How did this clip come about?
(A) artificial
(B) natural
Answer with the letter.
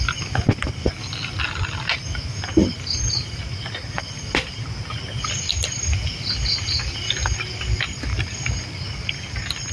B